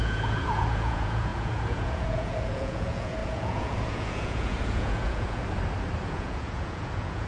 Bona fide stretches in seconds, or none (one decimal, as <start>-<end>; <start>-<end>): 5.4-6.0